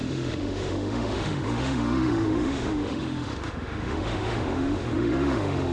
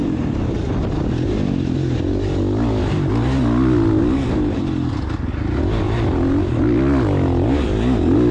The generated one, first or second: first